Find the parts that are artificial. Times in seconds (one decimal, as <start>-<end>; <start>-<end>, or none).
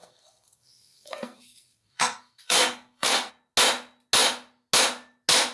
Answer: 0.0-3.3